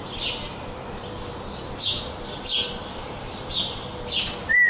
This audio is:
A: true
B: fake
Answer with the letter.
A